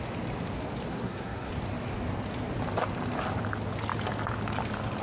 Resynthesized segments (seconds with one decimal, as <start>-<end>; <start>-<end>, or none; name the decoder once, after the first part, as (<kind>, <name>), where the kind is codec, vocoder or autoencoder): 0.9-1.5 (codec, SNAC)